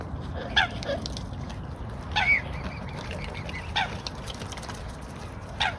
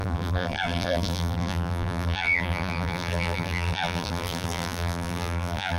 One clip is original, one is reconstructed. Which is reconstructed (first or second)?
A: second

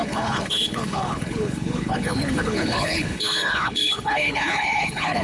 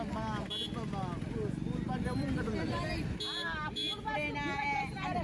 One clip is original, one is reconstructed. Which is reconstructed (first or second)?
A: first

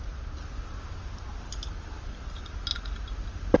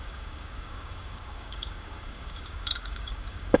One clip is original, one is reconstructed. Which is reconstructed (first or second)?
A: second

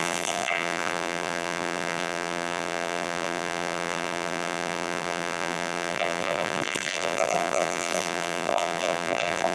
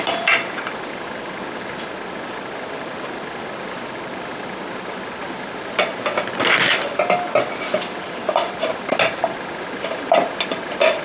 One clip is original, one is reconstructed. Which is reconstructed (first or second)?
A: first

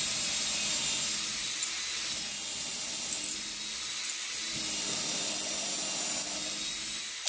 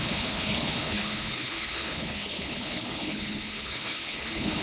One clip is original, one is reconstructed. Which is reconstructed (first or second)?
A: second